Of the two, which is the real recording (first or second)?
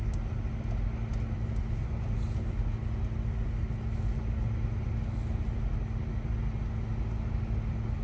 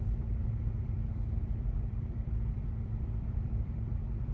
first